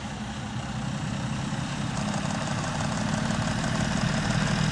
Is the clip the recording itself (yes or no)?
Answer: yes